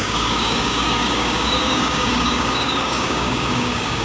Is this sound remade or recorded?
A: remade